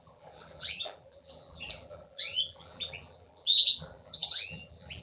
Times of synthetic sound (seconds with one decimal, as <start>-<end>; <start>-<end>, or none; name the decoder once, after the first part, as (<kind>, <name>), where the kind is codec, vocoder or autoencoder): 0.0-5.0 (vocoder, BigVGAN v2)